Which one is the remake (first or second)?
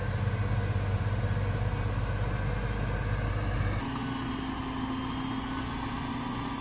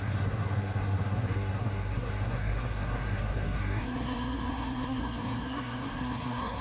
second